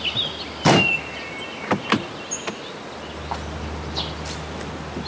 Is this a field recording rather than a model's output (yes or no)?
yes